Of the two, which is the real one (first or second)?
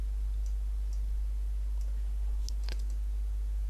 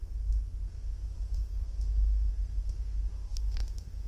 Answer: first